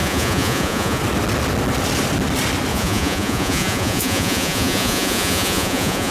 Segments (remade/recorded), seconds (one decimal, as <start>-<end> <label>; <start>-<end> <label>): 0.0-1.0 remade; 1.0-2.7 recorded; 2.7-6.1 remade